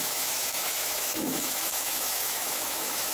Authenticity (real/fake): fake